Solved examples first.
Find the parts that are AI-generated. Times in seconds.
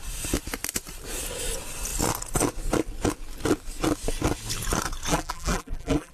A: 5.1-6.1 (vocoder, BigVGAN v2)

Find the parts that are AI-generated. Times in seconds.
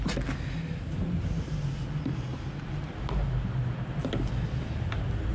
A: 1.0-1.7 (vocoder, BigVGAN v2); 2.3-2.9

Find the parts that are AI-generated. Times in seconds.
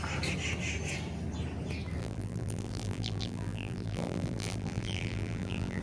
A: 2.0-5.8 (vocoder, BigVGAN v2)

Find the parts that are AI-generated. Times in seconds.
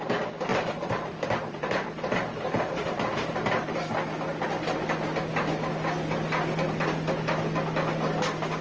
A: 0.5-3.8 (vocoder, BigVGAN v2)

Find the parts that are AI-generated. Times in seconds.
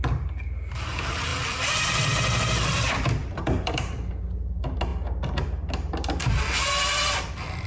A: 1.3-2.1 (vocoder, BigVGAN v2); 3.2-4.1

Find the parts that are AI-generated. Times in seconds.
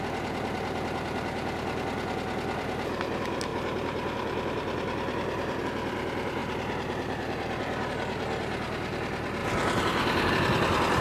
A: 3.5-5.6 (vocoder, BigVGAN v2); 6.4-7.9; 9.4-10.3